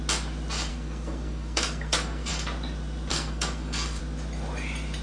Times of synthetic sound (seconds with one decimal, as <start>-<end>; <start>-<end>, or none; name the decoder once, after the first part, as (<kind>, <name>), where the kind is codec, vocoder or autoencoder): 0.7-2.3 (codec, SNAC); 3.1-4.0